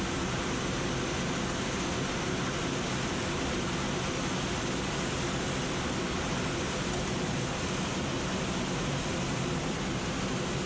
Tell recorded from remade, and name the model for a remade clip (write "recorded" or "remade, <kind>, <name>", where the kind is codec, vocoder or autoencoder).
recorded